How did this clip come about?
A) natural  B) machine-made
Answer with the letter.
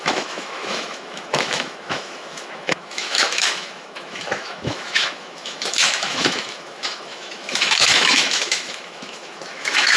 B